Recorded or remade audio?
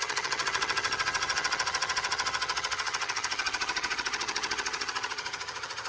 remade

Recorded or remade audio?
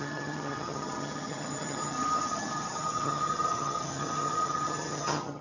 remade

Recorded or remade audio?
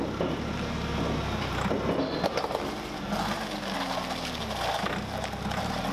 recorded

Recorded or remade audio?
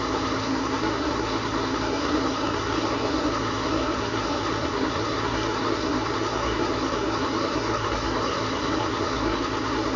remade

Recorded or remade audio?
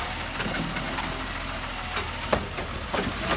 recorded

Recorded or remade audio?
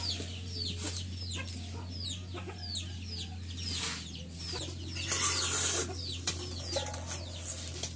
recorded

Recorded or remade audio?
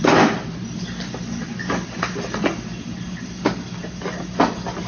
recorded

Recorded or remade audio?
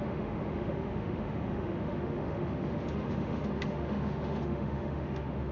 remade